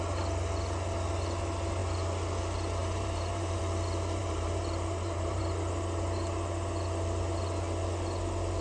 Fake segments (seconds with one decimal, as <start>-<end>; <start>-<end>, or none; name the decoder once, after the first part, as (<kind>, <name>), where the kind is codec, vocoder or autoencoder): 2.8-3.6 (vocoder, BigVGAN v2); 4.2-5.4